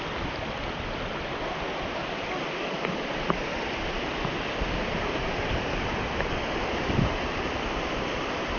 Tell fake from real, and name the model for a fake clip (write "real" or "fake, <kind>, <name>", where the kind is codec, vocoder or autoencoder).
real